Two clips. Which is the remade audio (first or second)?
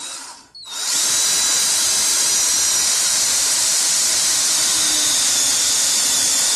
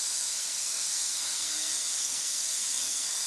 second